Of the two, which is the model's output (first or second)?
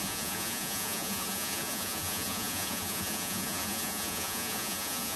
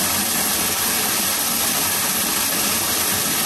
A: first